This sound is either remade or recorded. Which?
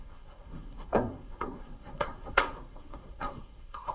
remade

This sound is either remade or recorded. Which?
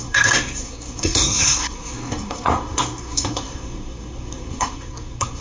remade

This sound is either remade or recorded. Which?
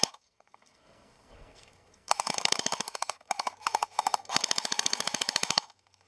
remade